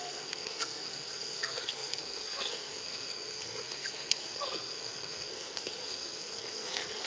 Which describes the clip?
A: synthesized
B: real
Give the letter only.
A